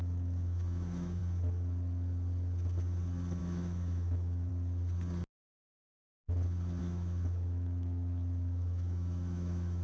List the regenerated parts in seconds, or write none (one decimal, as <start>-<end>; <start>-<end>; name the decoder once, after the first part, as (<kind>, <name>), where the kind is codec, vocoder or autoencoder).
0.0-1.2 (autoencoder, DAC-VAE); 3.4-4.5; 6.8-9.8